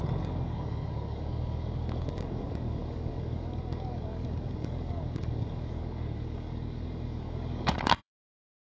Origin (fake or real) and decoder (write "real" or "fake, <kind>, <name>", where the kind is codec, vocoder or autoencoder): fake, codec, DAC